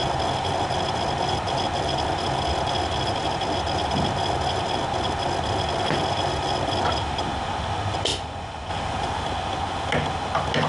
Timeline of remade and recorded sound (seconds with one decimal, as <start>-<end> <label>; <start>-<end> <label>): 0.0-8.1 recorded; 8.1-8.7 remade; 8.7-10.7 recorded